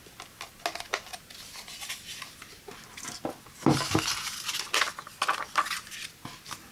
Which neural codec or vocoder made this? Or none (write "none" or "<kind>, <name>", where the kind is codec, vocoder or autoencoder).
none